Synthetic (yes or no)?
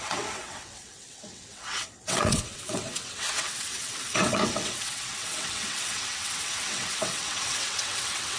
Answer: yes